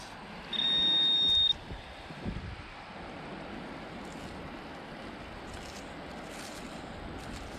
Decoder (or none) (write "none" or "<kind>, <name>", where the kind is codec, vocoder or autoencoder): none